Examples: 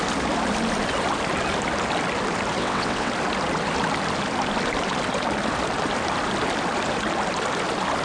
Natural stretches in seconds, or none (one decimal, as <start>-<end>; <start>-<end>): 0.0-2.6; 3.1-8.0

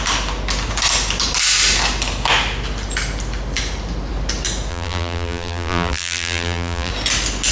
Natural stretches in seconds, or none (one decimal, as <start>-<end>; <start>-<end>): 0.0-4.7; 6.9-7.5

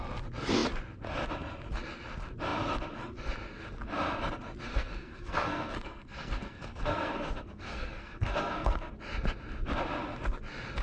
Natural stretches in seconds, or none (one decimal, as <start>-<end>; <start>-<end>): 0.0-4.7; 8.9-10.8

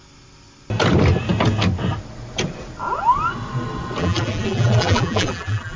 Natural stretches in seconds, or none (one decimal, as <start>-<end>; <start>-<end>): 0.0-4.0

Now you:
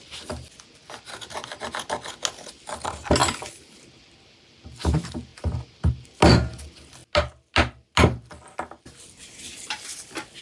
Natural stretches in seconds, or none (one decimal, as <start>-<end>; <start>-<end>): 0.0-10.4

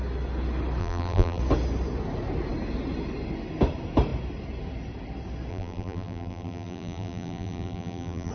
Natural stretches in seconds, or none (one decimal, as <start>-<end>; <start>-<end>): 0.0-0.8; 1.4-5.5

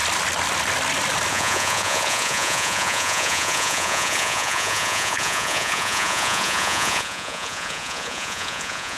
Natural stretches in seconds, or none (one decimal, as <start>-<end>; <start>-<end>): 0.0-1.3